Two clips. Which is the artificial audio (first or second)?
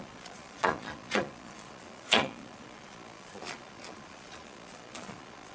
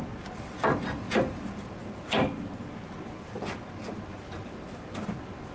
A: first